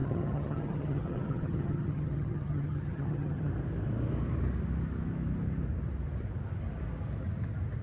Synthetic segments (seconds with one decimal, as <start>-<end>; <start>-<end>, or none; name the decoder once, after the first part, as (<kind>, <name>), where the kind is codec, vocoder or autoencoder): 0.0-3.5 (vocoder, HiFi-GAN)